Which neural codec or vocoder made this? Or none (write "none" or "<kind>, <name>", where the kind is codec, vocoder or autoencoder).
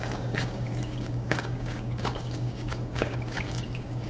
codec, DAC